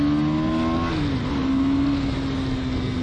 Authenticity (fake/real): real